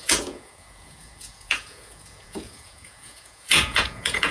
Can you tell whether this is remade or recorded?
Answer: remade